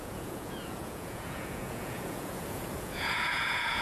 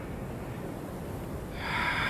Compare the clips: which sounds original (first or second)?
second